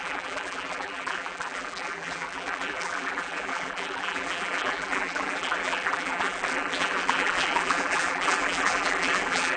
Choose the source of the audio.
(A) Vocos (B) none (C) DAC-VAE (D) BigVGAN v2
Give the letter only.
D